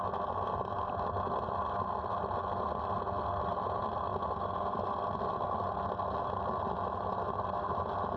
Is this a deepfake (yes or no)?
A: no